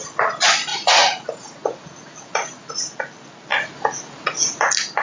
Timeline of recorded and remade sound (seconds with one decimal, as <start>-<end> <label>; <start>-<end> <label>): 0.0-0.7 recorded; 0.7-2.7 remade; 2.7-3.5 recorded; 3.5-4.6 remade; 4.6-5.0 recorded